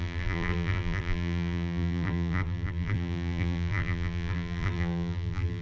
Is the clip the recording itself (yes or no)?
no